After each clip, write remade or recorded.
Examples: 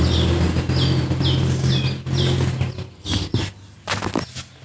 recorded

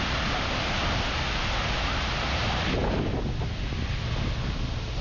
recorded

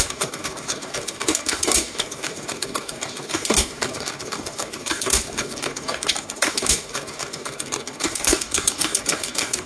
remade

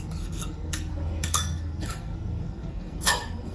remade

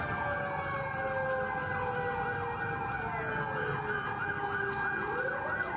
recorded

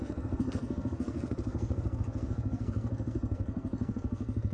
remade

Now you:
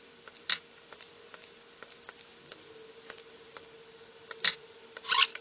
recorded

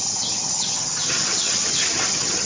remade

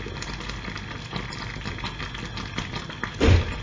recorded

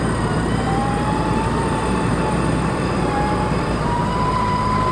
remade